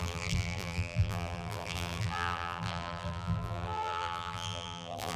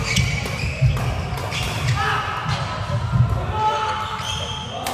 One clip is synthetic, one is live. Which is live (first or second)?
second